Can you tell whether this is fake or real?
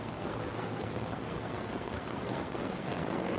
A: fake